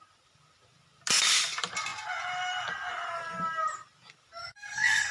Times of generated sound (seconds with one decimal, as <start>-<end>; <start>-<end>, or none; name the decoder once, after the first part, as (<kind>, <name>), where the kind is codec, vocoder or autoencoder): 4.4-5.1 (codec, SNAC)